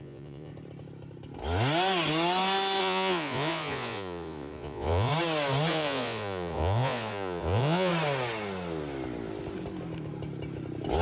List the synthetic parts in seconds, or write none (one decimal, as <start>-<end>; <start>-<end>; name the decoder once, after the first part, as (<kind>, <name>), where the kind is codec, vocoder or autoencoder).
0.0-0.5 (vocoder, Vocos); 2.8-5.1; 5.7-7.9